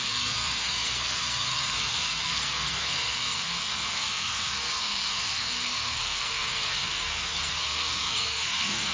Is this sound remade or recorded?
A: remade